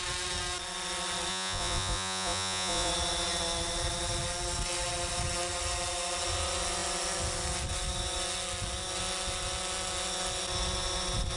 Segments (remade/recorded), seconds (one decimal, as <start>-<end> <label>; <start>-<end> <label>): 0.0-1.3 recorded; 1.3-2.9 remade; 2.9-11.4 recorded